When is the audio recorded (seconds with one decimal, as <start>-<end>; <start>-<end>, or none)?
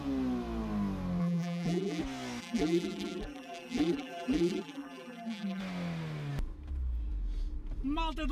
0.0-1.2; 2.0-2.4; 5.6-8.3